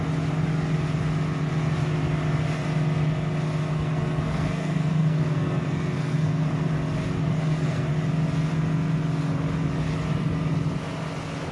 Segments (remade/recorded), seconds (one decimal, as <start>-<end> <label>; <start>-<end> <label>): 0.0-3.7 recorded; 3.7-6.7 remade; 6.7-7.2 recorded; 7.2-7.9 remade; 7.9-11.5 recorded